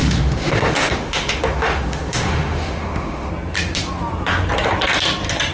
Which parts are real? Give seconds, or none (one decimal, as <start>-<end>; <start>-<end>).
3.3-5.5